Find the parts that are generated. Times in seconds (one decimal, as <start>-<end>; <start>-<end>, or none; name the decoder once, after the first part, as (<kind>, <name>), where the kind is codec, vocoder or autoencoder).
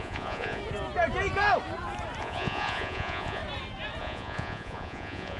0.0-0.6 (vocoder, Vocos); 2.2-3.4; 4.0-5.4